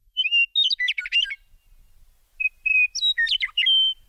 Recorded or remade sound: recorded